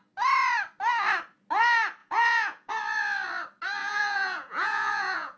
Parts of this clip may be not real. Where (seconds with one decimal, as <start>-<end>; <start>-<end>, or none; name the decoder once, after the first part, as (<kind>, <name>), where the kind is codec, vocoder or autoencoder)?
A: 2.0-2.7 (vocoder, Vocos); 3.8-5.4